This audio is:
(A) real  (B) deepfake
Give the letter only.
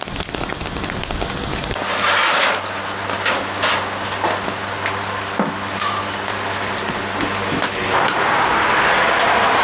A